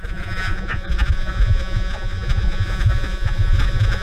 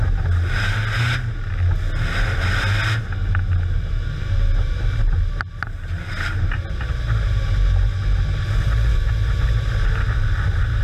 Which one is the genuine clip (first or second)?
second